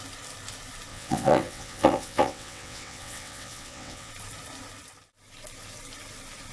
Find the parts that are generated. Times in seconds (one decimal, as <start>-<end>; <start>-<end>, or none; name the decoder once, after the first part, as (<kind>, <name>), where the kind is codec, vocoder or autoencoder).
0.9-4.1 (vocoder, WaveNeXt)